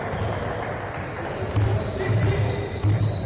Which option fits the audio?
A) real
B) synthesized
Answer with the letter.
A